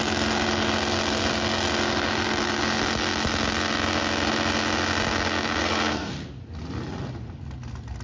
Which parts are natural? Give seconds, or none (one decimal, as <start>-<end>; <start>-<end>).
0.0-5.6; 6.1-8.0